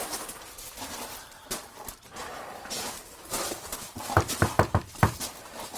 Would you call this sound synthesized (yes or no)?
yes